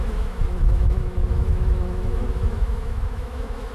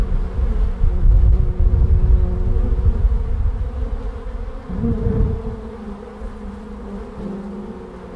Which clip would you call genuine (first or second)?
second